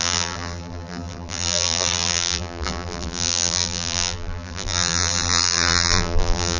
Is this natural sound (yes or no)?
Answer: no